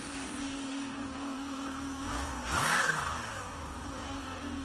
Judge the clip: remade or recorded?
remade